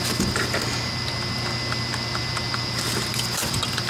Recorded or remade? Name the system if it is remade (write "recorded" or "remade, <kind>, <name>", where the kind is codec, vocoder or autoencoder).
recorded